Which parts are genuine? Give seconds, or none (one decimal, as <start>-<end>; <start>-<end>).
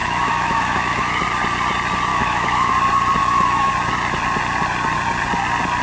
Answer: 1.2-2.1; 2.7-3.2; 3.7-5.8